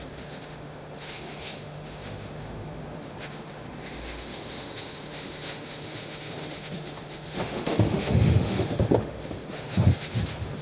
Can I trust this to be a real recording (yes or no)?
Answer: no